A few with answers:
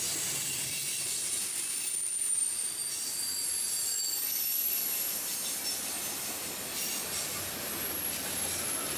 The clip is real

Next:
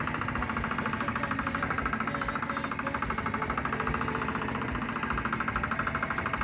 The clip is real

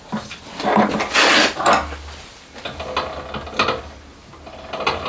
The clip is real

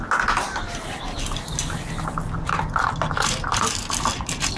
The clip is real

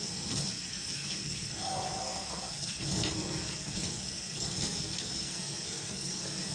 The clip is fake